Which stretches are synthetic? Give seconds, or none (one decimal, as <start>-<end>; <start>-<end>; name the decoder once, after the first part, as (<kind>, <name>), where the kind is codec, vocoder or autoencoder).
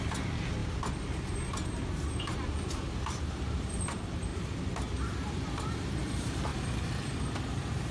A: 0.0-7.9 (vocoder, BigVGAN v2)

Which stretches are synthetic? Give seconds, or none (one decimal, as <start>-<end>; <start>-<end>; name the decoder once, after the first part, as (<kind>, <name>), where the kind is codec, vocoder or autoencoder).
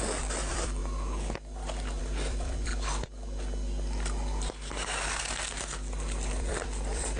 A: 0.0-0.8 (vocoder, BigVGAN v2); 2.0-2.7; 6.3-7.2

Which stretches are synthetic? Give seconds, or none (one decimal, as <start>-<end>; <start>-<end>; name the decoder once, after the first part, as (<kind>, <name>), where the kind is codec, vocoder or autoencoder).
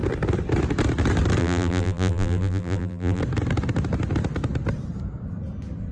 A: 1.4-3.2 (vocoder, BigVGAN v2)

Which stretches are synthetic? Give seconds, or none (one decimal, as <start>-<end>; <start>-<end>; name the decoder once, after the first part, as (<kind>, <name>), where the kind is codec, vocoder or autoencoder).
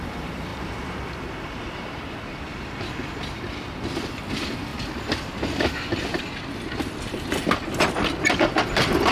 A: 0.0-4.7 (vocoder, BigVGAN v2); 8.3-9.1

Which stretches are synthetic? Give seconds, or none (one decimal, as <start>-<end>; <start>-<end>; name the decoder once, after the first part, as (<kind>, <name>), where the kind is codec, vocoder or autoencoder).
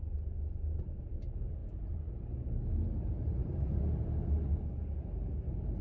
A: none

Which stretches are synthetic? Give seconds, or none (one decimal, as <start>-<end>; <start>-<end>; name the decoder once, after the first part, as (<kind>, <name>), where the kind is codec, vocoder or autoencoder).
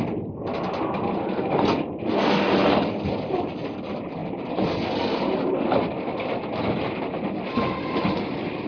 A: 0.0-8.7 (vocoder, BigVGAN v2)